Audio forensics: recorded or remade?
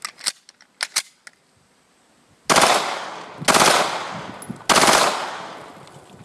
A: recorded